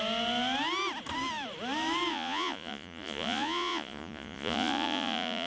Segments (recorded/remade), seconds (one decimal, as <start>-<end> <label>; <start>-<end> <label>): 0.0-2.1 recorded; 2.1-5.5 remade